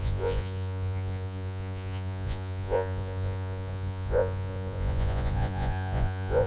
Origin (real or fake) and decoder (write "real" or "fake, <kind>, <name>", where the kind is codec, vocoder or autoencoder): fake, vocoder, Vocos